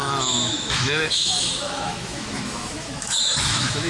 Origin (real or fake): fake